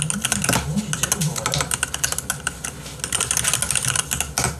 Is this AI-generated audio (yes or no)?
no